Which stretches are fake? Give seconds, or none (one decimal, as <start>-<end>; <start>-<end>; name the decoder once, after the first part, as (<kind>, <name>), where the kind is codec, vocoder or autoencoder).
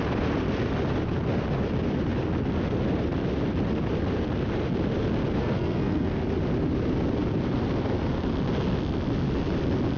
5.4-6.2 (codec, SNAC)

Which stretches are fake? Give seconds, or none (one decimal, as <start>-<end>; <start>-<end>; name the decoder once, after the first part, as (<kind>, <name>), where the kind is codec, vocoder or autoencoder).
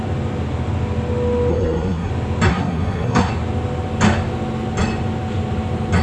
1.5-2.1 (codec, SNAC); 2.5-3.3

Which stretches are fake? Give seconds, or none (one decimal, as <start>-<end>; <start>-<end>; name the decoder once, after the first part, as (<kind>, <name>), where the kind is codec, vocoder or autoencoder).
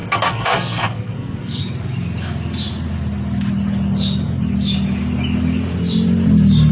0.0-1.6 (codec, SNAC)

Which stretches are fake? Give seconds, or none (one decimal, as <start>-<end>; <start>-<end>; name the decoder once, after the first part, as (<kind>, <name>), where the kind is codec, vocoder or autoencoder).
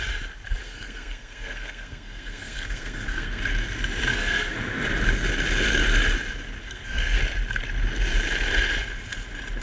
0.6-3.4 (codec, SNAC); 4.1-4.6; 6.6-7.2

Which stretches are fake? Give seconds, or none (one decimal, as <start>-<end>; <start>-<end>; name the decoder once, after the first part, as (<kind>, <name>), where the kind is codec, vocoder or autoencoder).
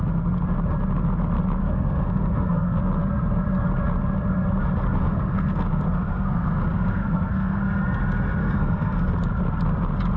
1.6-2.8 (codec, SNAC); 5.0-7.6; 8.4-9.1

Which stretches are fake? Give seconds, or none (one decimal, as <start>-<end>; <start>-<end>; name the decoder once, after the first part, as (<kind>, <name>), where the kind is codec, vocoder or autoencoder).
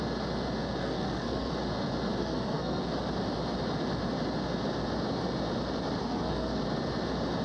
0.8-1.5 (codec, SNAC); 2.2-2.8; 6.0-6.6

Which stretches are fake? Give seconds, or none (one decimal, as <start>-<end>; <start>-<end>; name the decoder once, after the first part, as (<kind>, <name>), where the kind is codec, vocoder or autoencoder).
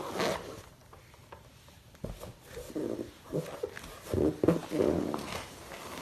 none